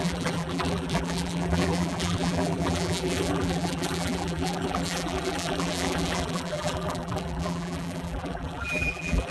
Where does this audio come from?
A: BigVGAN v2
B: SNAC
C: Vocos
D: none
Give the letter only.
A